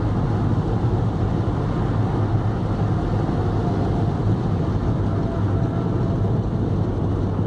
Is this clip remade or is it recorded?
recorded